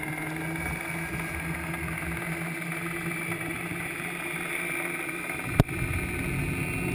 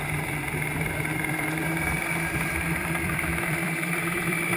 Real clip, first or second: first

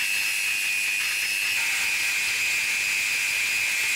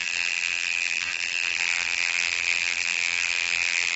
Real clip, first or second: first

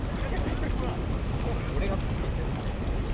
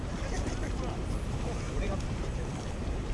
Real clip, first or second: first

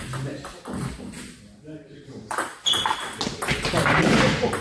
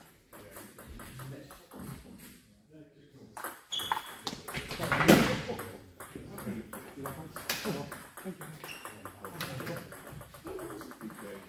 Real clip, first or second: first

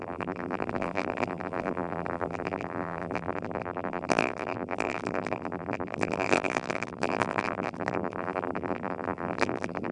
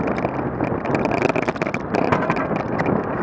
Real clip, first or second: second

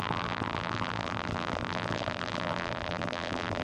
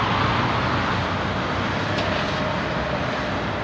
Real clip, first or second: second